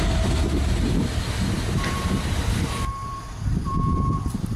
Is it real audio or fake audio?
fake